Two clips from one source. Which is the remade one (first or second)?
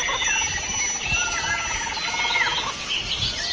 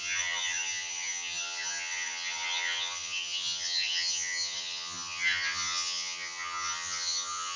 second